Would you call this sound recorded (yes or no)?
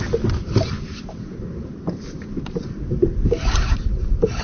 yes